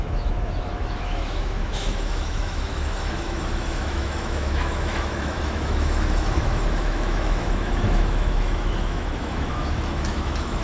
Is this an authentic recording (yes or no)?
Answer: no